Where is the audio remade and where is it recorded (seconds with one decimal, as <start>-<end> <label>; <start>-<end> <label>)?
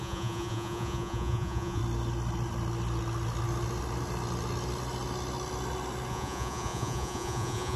0.0-1.8 remade; 1.8-6.1 recorded; 6.1-7.8 remade